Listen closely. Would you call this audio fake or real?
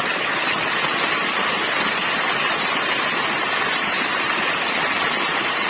fake